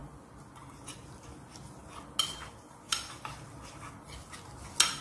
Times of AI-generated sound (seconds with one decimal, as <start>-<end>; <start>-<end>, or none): none